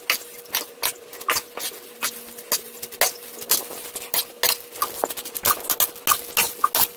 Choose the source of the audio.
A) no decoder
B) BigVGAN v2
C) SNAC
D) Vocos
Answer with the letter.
A